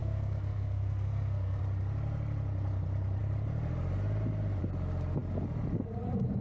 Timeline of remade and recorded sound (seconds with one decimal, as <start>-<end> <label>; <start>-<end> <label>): 0.0-1.6 remade; 1.6-6.4 recorded